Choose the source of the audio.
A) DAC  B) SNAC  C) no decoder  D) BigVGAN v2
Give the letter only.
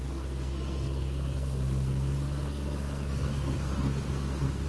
B